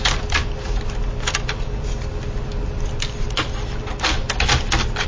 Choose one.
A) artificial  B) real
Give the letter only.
B